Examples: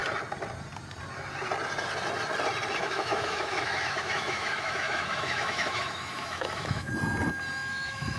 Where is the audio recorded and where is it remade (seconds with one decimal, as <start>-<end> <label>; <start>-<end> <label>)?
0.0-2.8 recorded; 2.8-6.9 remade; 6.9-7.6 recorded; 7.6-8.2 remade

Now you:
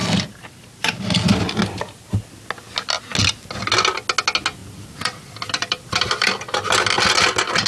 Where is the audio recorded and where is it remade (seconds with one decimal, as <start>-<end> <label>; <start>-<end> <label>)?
0.0-1.5 remade; 1.5-4.6 recorded; 4.6-6.7 remade; 6.7-7.7 recorded

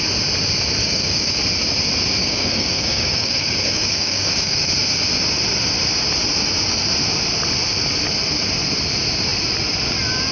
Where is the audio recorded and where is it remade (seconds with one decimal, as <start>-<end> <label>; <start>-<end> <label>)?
0.0-0.8 recorded; 0.8-1.4 remade; 1.4-2.2 recorded; 2.2-4.7 remade; 4.7-10.3 recorded

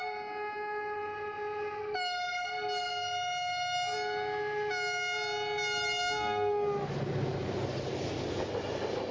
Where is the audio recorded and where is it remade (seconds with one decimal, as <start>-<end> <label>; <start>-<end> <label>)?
0.0-9.1 recorded

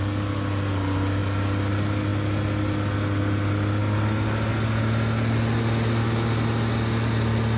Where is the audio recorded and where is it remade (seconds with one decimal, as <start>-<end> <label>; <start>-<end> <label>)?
0.0-7.6 recorded